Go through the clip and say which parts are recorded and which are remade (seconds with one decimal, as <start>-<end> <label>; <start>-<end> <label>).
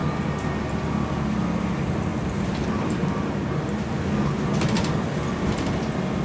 0.0-6.2 recorded